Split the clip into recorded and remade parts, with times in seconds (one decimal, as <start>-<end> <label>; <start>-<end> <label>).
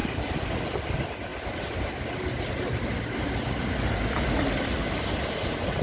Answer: 0.0-5.8 recorded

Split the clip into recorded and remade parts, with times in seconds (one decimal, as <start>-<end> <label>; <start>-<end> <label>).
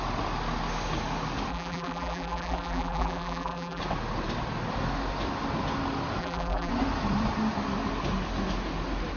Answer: 0.0-1.5 recorded; 1.5-3.8 remade; 3.8-6.2 recorded; 6.2-6.7 remade; 6.7-9.2 recorded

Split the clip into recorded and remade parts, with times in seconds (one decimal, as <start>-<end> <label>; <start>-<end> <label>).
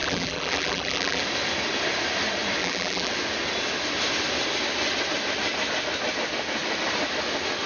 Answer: 0.0-1.2 remade; 1.2-2.6 recorded; 2.6-3.1 remade; 3.1-7.7 recorded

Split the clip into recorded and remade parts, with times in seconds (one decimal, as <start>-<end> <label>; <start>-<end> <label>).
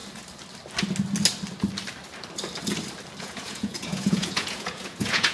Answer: 0.0-3.2 recorded; 3.2-5.3 remade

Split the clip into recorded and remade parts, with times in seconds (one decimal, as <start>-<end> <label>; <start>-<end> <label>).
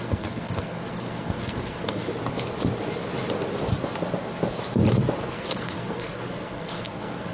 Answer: 0.0-2.1 remade; 2.1-5.3 recorded; 5.3-7.3 remade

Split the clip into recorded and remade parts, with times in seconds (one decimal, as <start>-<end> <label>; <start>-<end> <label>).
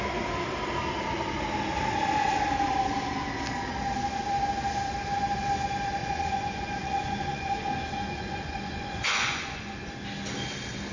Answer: 0.0-6.0 recorded; 6.0-9.9 remade; 9.9-10.9 recorded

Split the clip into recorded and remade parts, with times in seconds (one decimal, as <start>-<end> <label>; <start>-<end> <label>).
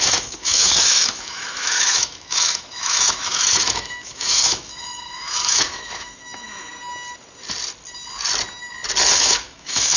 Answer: 0.0-6.7 remade; 6.7-9.2 recorded; 9.2-10.0 remade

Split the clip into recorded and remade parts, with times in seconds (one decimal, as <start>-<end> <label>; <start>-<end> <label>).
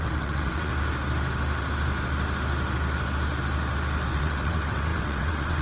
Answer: 0.0-0.7 remade; 0.7-4.1 recorded; 4.1-5.6 remade